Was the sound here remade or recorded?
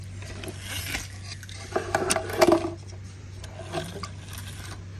recorded